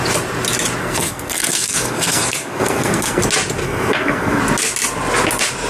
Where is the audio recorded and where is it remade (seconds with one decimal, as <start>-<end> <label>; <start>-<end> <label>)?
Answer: 0.0-0.8 recorded; 0.8-3.2 remade; 3.2-3.6 recorded; 3.6-4.4 remade; 4.4-5.7 recorded